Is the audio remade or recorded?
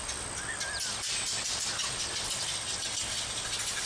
recorded